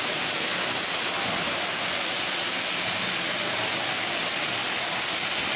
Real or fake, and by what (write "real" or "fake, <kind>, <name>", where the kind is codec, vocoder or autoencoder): real